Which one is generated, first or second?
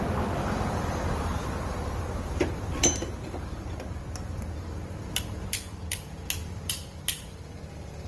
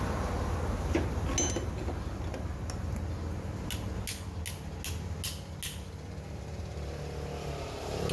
first